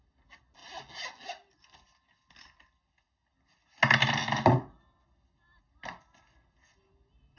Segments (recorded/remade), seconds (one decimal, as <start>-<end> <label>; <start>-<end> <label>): 0.0-7.4 recorded